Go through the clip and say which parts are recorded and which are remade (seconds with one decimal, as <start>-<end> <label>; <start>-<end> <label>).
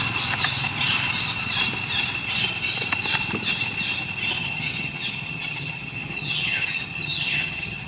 0.0-4.4 recorded; 4.4-7.9 remade